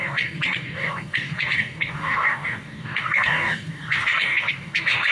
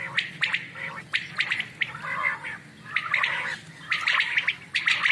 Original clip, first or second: second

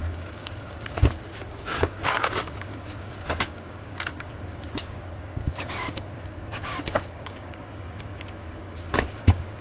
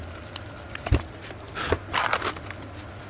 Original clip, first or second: second